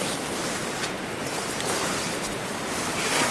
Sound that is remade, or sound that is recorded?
recorded